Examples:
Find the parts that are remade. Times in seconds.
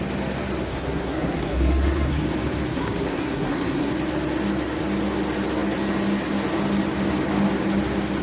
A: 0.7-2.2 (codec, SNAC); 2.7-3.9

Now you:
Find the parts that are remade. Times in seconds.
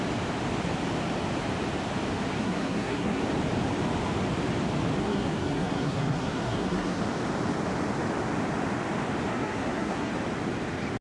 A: 2.4-3.2 (codec, SNAC); 5.0-7.0; 9.3-10.1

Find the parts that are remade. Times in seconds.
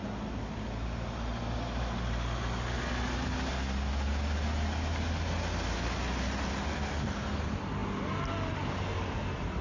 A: none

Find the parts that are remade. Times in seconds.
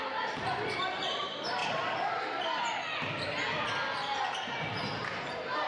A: 1.1-1.6 (vocoder, BigVGAN v2); 5.0-5.7